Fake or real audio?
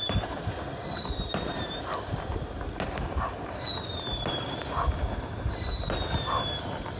real